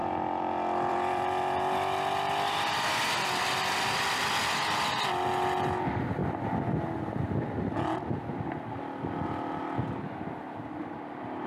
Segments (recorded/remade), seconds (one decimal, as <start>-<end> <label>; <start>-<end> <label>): 0.0-1.6 remade; 1.6-11.5 recorded